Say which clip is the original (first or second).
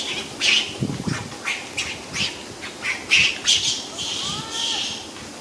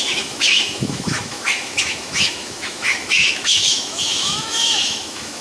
first